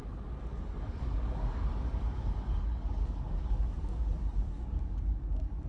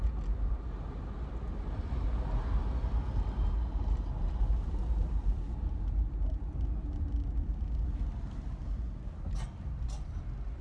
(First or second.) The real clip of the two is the second